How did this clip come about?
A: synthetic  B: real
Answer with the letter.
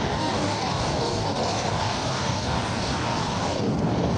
A